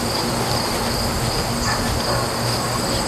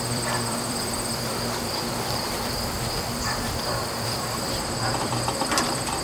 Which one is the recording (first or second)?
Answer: first